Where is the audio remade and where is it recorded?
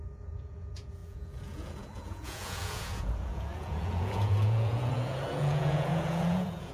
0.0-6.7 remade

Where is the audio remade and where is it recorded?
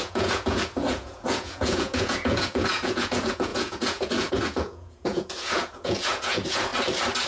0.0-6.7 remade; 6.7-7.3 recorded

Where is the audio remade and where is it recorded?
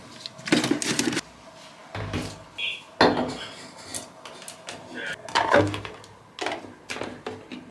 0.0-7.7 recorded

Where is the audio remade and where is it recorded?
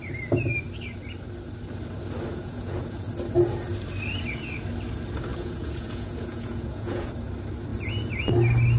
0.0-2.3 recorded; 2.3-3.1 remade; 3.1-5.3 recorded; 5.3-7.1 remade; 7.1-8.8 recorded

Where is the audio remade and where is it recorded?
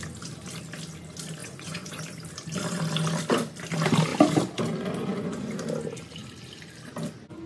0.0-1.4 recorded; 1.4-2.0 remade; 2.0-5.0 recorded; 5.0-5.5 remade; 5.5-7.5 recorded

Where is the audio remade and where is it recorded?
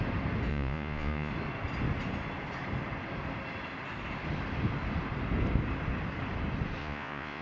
0.0-0.5 recorded; 0.5-1.3 remade; 1.3-6.8 recorded; 6.8-7.4 remade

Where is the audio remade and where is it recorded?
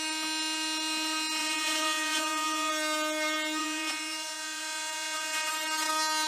0.0-1.4 recorded; 1.4-2.7 remade; 2.7-3.6 recorded; 3.6-5.5 remade; 5.5-6.3 recorded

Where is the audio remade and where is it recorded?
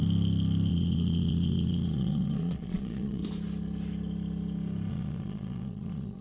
0.0-0.7 recorded; 0.7-3.2 remade; 3.2-4.9 recorded; 4.9-6.2 remade